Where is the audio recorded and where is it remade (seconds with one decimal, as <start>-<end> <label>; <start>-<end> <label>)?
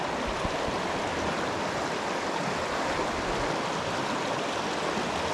0.0-5.3 recorded